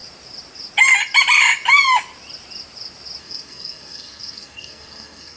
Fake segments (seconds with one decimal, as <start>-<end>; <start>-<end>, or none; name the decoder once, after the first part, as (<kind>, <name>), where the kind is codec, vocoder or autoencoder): 3.2-5.4 (codec, SNAC)